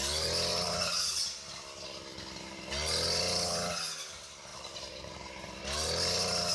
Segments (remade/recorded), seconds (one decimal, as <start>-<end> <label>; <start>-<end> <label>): 0.0-0.5 recorded; 0.5-1.2 remade; 1.2-4.5 recorded; 4.5-5.6 remade; 5.6-6.5 recorded